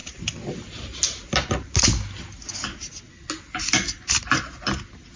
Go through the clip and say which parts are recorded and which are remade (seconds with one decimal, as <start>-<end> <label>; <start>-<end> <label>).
0.0-5.2 recorded